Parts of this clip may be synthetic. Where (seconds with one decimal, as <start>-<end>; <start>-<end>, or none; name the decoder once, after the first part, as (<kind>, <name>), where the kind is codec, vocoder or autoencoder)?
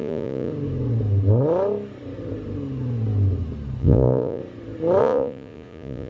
0.0-0.5 (vocoder, Vocos); 3.8-4.4; 5.0-6.1